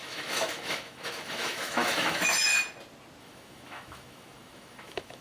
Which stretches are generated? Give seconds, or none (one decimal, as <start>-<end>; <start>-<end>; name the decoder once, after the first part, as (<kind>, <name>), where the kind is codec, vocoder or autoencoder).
0.0-2.5 (autoencoder, DAC-VAE); 3.2-5.2